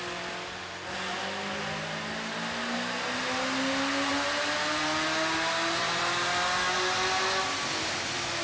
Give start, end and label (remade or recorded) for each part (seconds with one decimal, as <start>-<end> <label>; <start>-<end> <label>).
0.0-8.4 recorded